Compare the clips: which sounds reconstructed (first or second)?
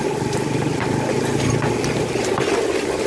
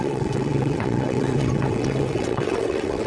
second